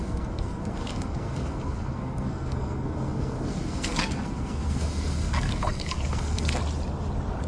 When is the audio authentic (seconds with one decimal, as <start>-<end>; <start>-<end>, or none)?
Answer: 6.6-7.5